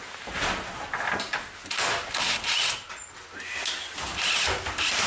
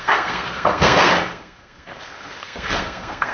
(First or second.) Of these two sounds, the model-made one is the second